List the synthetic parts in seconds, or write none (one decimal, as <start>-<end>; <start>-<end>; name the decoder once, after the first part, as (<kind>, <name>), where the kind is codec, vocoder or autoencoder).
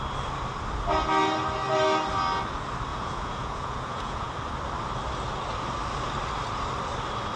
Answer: 2.9-4.3 (vocoder, Vocos)